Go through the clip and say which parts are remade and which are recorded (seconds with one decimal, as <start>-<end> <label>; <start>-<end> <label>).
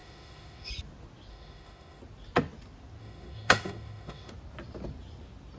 0.0-0.7 remade; 0.7-1.3 recorded; 1.3-2.0 remade; 2.0-3.0 recorded; 3.0-4.3 remade; 4.3-5.6 recorded